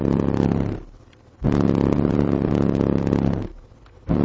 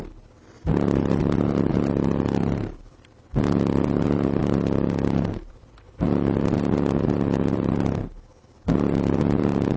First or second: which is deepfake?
second